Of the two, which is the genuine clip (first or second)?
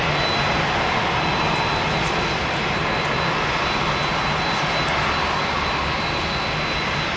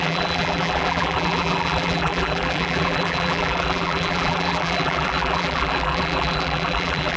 first